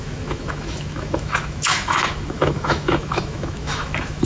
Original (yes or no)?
no